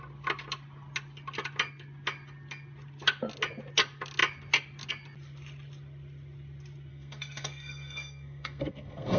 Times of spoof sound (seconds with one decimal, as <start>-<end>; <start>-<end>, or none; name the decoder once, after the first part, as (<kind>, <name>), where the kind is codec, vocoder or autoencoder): 6.9-9.2 (codec, SNAC)